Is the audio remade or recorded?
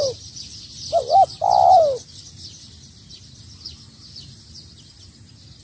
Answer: recorded